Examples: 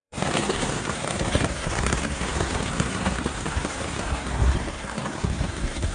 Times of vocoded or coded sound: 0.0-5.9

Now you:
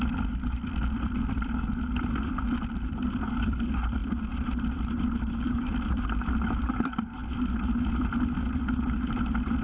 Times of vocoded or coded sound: 0.0-4.0; 4.9-7.2; 7.9-9.6

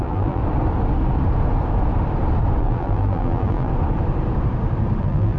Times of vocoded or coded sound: 0.0-0.4; 2.6-3.7; 5.0-5.4

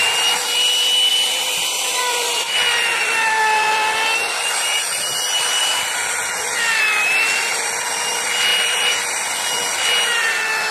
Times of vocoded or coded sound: 1.1-5.6; 8.5-9.4

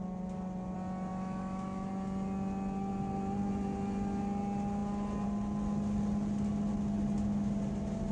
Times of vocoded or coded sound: 1.1-1.9

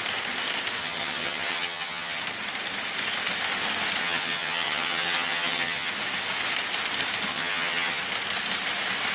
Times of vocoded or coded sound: 0.8-2.2; 4.0-5.9; 7.3-8.0

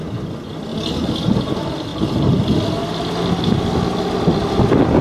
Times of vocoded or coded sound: none

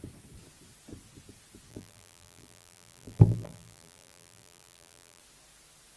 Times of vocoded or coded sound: 1.7-5.2